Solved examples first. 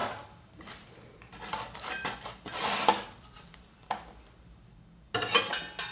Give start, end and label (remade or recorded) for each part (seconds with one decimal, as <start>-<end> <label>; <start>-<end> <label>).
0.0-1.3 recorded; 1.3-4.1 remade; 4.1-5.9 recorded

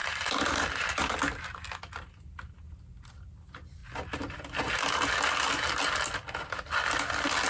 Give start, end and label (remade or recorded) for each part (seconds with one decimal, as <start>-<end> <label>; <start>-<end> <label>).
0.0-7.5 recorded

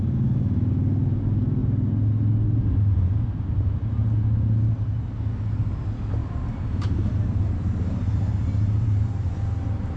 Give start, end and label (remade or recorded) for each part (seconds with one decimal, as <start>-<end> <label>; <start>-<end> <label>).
0.0-6.2 recorded; 6.2-9.3 remade; 9.3-10.0 recorded

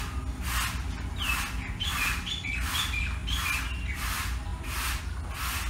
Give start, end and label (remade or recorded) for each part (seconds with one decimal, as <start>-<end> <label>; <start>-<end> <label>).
0.0-4.5 recorded; 4.5-5.0 remade; 5.0-5.7 recorded